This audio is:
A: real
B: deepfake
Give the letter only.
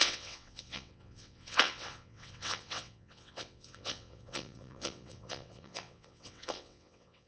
B